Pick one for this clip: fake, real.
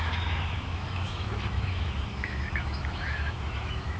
fake